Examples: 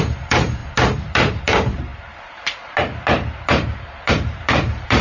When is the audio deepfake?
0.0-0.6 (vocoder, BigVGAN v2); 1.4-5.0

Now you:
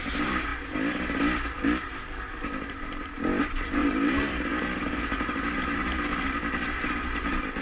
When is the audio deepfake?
0.0-0.5 (vocoder, BigVGAN v2); 3.4-6.1

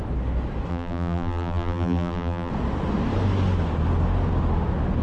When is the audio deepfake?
0.7-2.5 (vocoder, BigVGAN v2)

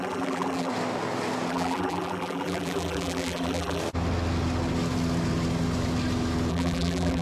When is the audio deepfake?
0.0-0.7 (vocoder, BigVGAN v2); 1.5-3.8; 6.5-7.2

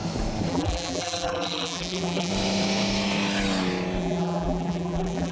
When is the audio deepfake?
0.5-2.3 (vocoder, BigVGAN v2); 4.0-5.3

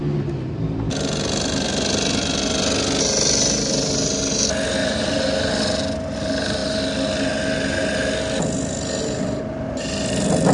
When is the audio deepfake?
4.8-5.5 (vocoder, BigVGAN v2)